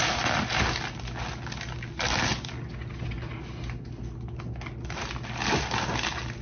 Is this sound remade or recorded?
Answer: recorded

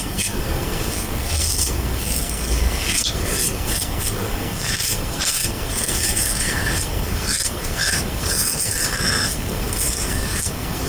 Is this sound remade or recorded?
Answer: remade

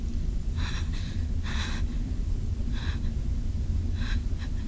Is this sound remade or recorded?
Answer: remade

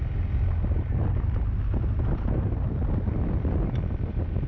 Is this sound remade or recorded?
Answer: recorded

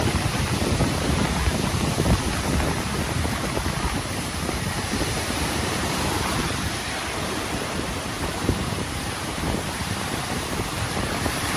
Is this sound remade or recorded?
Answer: remade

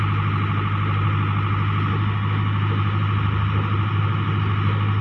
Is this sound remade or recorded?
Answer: recorded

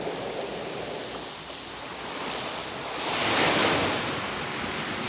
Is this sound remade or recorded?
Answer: recorded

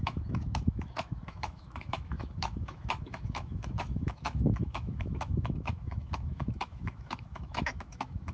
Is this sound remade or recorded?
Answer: remade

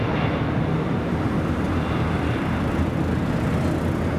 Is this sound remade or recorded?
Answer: recorded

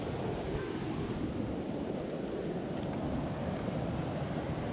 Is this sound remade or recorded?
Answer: recorded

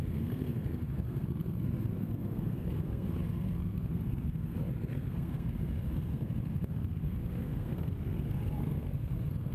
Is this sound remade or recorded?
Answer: remade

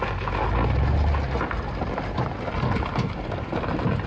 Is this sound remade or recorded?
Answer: recorded